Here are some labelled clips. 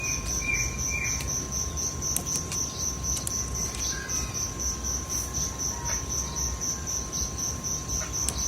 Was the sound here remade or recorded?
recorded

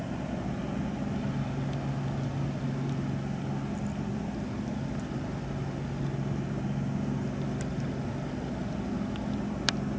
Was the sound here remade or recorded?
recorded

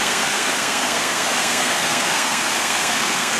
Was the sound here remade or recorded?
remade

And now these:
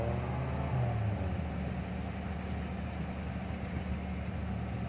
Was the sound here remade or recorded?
recorded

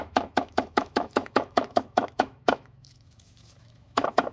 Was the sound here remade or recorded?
remade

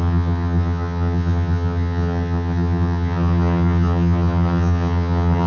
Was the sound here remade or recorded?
remade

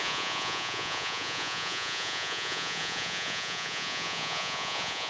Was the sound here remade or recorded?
remade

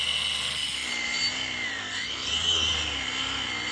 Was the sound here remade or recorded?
recorded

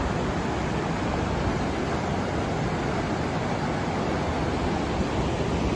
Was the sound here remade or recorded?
recorded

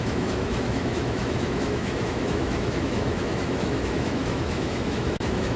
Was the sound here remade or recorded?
remade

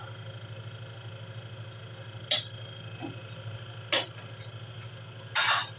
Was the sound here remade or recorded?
recorded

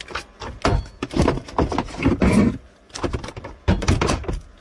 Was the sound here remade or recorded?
recorded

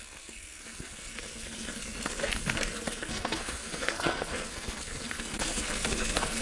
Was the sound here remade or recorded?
remade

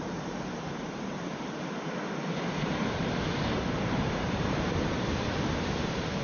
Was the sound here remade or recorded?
remade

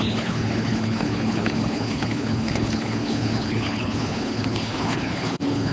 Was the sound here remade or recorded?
remade